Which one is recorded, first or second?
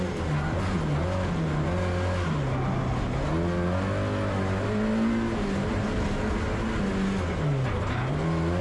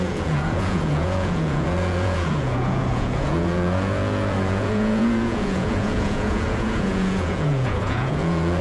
first